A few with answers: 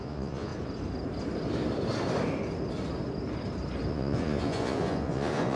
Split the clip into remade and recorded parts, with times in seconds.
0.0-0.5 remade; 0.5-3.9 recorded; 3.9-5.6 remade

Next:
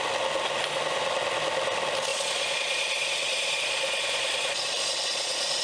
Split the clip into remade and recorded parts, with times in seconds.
0.0-2.1 recorded; 2.1-5.6 remade

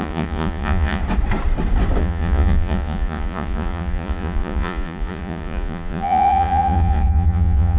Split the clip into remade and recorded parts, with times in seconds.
0.0-1.0 remade; 1.0-2.0 recorded; 2.0-7.8 remade

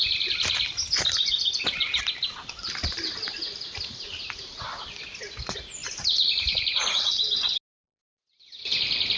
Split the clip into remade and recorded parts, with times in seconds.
0.0-9.2 recorded